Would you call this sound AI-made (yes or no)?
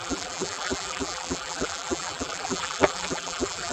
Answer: yes